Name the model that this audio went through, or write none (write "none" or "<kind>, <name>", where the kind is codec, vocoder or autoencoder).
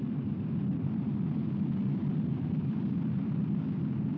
none